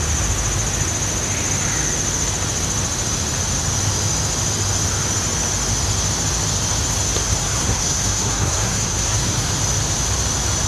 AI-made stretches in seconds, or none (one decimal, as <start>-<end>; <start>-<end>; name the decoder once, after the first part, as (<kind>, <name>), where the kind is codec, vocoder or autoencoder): 7.4-9.5 (codec, SNAC)